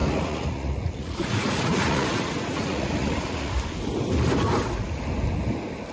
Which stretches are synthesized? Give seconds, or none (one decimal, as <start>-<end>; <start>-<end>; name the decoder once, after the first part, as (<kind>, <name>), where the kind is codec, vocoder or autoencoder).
0.0-3.5 (vocoder, Vocos)